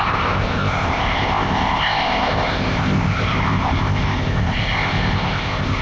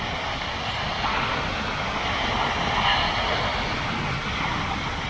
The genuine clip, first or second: second